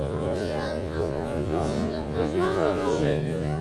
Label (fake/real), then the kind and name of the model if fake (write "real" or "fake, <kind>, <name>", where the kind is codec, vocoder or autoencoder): fake, vocoder, Vocos